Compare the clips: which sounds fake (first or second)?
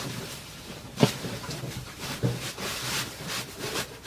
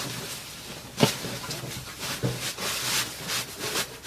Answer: first